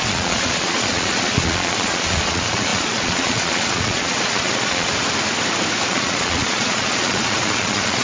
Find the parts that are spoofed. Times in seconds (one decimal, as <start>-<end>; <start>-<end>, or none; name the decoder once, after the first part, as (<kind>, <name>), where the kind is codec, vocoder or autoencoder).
0.0-4.9 (vocoder, Vocos); 5.9-8.0